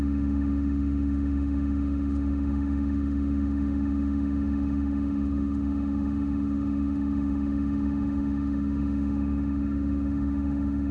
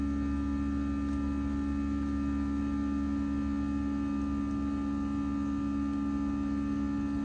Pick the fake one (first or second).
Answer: first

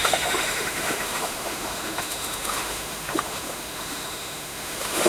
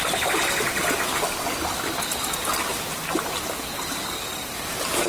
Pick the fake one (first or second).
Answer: first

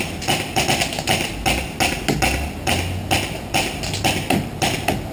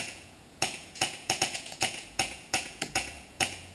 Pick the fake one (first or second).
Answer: second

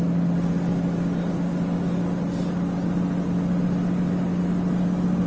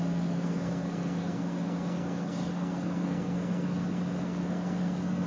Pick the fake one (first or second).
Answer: second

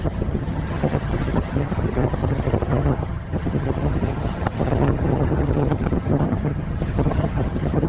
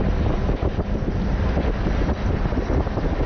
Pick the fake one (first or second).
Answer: first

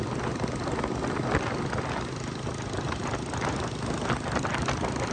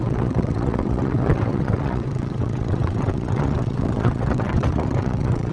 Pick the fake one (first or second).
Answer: second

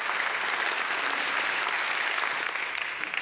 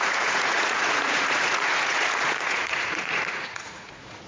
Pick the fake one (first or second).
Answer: second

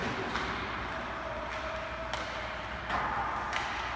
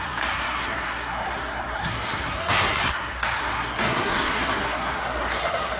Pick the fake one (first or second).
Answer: second